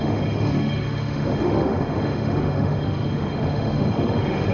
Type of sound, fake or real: fake